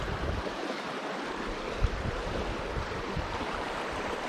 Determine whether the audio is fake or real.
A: fake